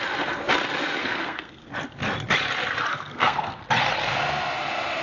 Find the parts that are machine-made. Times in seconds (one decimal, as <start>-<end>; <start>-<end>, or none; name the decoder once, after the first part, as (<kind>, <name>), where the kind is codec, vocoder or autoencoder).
1.0-1.7 (codec, SNAC); 2.9-3.6